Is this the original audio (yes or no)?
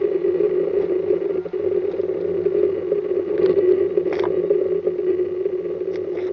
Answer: yes